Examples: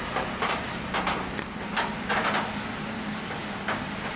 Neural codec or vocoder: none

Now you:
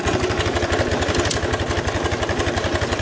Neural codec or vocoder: none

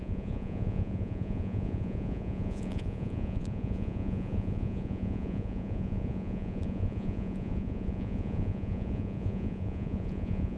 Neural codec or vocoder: vocoder, Vocos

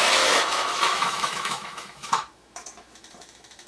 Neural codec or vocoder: autoencoder, DAC-VAE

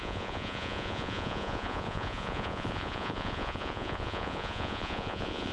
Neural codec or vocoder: vocoder, Vocos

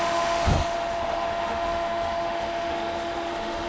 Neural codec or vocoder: autoencoder, DAC-VAE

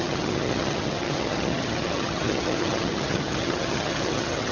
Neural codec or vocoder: vocoder, HiFi-GAN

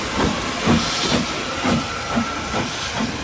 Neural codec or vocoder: none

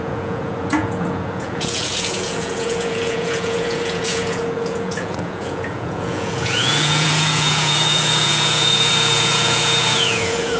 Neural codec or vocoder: vocoder, Vocos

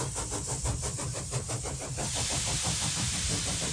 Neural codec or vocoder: vocoder, BigVGAN v2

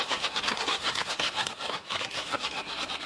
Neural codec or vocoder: codec, SNAC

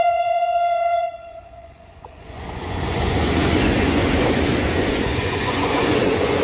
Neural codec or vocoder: vocoder, Vocos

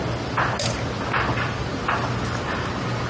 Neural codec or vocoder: none